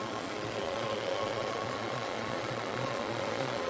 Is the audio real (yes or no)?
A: no